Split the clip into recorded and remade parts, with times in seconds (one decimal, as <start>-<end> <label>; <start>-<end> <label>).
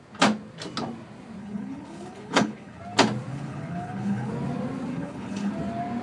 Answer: 0.0-1.4 recorded; 1.4-2.8 remade; 2.8-3.3 recorded; 3.3-4.3 remade; 4.3-4.9 recorded; 4.9-5.5 remade; 5.5-6.0 recorded